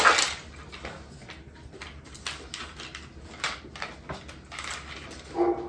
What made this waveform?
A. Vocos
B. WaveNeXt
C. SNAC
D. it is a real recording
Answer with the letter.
D